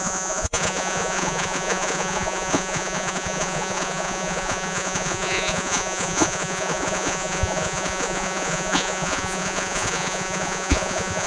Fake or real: fake